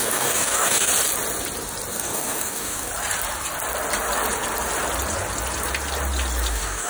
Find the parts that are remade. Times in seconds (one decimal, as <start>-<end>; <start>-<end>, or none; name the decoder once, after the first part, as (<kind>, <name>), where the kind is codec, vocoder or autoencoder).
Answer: 0.0-0.9 (codec, DAC); 1.9-2.9; 6.5-6.9